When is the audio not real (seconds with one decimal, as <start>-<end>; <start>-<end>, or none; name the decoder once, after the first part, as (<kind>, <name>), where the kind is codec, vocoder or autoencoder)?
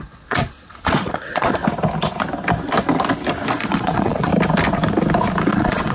0.0-1.6 (vocoder, Vocos); 3.5-4.3; 5.5-5.9